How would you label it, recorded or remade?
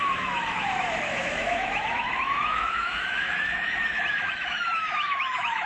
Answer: remade